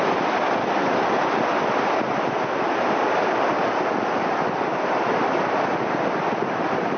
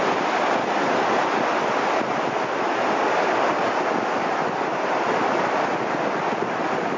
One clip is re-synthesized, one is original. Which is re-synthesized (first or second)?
first